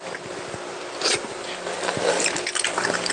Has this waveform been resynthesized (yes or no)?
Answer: yes